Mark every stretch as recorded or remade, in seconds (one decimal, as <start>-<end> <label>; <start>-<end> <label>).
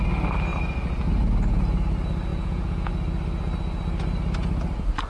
0.0-2.3 recorded; 2.3-2.9 remade; 2.9-5.1 recorded